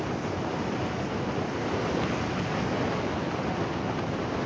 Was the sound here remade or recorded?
recorded